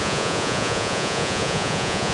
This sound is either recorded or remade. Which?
remade